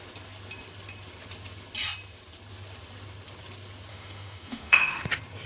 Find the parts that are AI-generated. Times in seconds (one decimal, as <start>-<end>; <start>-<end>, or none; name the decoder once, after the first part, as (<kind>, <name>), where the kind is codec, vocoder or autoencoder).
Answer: 3.9-5.0 (autoencoder, DAC-VAE)